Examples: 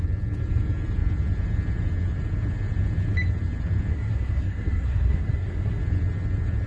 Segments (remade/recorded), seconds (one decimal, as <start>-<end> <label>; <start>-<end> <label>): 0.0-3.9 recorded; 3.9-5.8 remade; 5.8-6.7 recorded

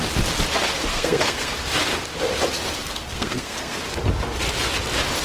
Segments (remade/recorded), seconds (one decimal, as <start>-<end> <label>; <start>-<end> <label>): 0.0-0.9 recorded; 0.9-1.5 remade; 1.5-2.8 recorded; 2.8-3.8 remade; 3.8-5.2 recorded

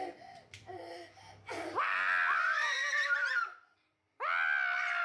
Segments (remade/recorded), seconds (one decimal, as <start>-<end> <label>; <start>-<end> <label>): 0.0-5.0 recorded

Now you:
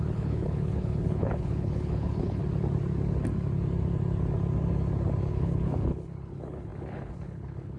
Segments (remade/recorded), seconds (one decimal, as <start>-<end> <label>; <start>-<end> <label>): 0.0-2.4 remade; 2.4-5.3 recorded; 5.3-7.8 remade

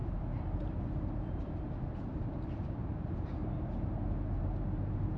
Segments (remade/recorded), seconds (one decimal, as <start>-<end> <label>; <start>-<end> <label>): 0.0-3.1 remade; 3.1-5.2 recorded

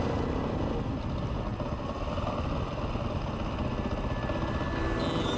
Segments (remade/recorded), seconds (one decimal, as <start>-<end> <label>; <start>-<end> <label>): 0.0-5.4 recorded

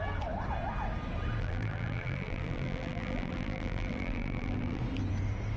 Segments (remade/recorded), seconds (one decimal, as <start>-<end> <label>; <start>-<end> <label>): 0.0-1.4 recorded; 1.4-4.8 remade; 4.8-5.6 recorded